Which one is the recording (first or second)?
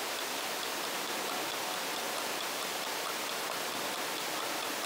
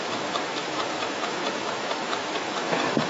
first